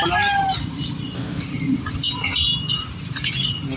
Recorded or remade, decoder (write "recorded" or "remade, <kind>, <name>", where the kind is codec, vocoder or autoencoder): recorded